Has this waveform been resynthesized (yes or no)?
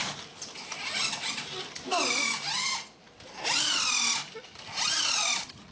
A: no